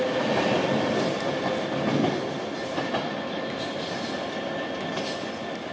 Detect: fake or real real